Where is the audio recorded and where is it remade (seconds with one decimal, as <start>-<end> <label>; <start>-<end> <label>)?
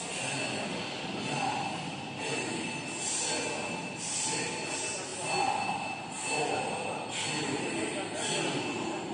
0.0-9.1 recorded